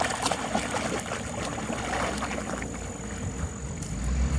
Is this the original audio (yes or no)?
yes